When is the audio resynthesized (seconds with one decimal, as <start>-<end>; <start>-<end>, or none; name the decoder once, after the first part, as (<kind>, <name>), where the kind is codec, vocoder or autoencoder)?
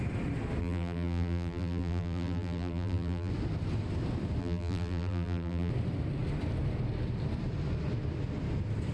0.6-3.3 (vocoder, BigVGAN v2); 4.4-5.7